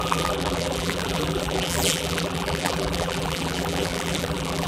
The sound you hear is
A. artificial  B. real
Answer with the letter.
A